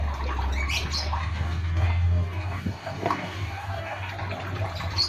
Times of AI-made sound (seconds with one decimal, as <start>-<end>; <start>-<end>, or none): 1.2-4.1